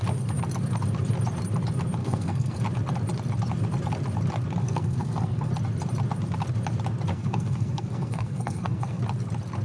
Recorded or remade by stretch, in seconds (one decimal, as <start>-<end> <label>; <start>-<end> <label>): 0.0-2.0 recorded; 2.0-2.6 remade; 2.6-4.6 recorded; 4.6-5.5 remade; 5.5-7.1 recorded; 7.1-9.0 remade; 9.0-9.6 recorded